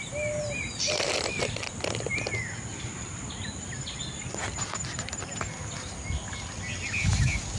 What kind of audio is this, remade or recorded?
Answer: recorded